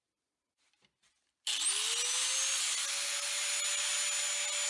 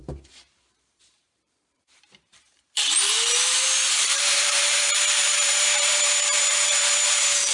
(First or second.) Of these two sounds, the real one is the first